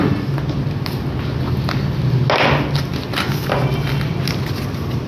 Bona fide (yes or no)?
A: yes